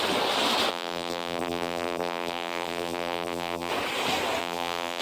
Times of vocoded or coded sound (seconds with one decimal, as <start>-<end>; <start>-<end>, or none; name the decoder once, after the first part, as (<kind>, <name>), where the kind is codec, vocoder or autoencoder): 0.7-3.7 (vocoder, BigVGAN v2); 4.4-5.0